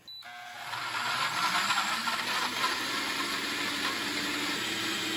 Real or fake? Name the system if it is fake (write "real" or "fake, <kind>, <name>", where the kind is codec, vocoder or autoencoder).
real